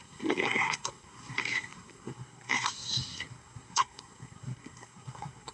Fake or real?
fake